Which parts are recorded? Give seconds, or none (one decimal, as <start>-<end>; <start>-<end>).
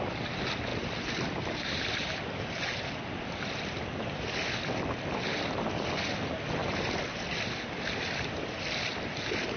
0.0-0.7; 2.6-9.6